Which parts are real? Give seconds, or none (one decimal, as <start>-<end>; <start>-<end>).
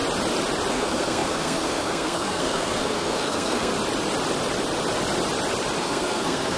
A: 0.0-0.7; 3.7-5.8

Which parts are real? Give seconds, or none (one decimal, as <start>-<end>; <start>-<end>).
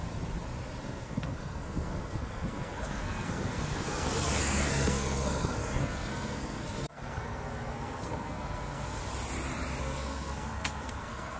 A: 0.0-0.8; 9.0-9.8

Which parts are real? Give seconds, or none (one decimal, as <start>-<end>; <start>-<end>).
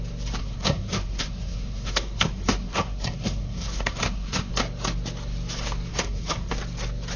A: 0.0-0.4; 4.5-5.9; 6.5-7.2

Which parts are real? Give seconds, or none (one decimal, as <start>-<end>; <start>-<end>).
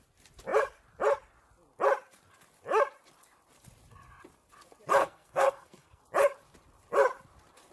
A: 0.0-5.0; 6.0-7.7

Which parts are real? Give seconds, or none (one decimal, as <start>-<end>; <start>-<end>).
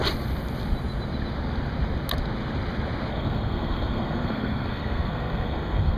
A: 0.0-3.1